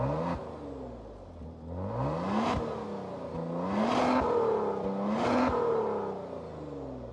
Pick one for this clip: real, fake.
real